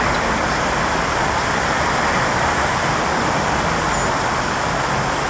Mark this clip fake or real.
real